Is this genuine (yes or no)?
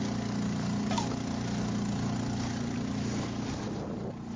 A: yes